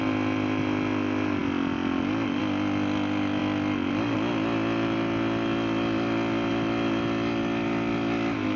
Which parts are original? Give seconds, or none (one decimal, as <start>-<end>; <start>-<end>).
0.0-8.6